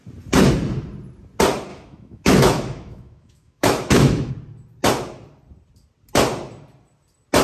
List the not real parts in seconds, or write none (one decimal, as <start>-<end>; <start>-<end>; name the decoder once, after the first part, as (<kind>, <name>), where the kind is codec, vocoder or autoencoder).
1.7-4.3 (autoencoder, DAC-VAE)

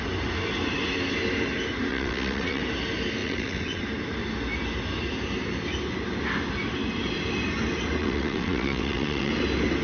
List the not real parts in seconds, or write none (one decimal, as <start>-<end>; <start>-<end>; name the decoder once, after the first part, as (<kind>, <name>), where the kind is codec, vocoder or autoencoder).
1.9-2.6 (vocoder, WaveNeXt); 3.2-3.8; 8.0-9.3